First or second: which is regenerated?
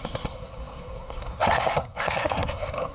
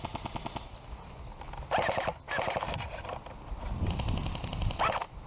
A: first